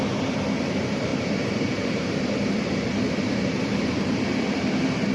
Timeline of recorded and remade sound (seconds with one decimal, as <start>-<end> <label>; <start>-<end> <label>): 0.0-1.1 recorded; 1.1-4.2 remade; 4.2-5.1 recorded